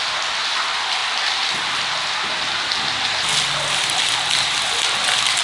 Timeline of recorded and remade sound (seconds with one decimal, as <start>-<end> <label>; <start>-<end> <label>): 0.0-5.4 recorded

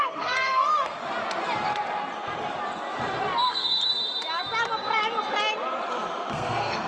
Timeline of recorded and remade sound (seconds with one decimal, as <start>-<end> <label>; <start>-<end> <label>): 0.0-1.0 remade; 1.0-3.5 recorded; 3.5-3.9 remade; 3.9-6.3 recorded; 6.3-6.9 remade

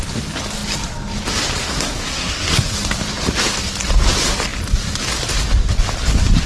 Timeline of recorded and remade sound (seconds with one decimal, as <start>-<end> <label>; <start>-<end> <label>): 0.0-1.6 recorded; 1.6-2.7 remade; 2.7-6.5 recorded

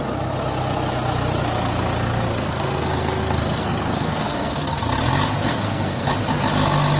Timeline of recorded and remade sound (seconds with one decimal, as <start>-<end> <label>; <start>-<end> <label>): 0.0-2.3 recorded; 2.3-4.8 remade; 4.8-5.5 recorded; 5.5-6.1 remade; 6.1-7.0 recorded